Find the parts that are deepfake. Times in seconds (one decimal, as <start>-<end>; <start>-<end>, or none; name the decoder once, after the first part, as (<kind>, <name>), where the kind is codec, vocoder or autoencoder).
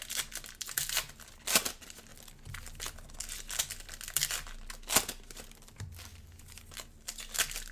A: none